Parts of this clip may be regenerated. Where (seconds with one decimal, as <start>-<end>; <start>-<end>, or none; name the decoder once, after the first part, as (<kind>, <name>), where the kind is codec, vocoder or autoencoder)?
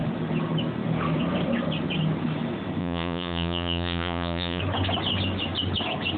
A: 2.8-4.6 (vocoder, Vocos)